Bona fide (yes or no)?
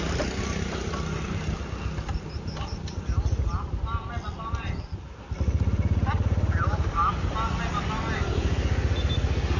yes